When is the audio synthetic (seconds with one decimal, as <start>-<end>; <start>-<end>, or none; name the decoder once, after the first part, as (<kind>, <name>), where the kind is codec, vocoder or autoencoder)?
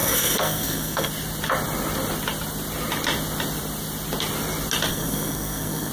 0.0-1.1 (codec, SNAC); 4.9-5.9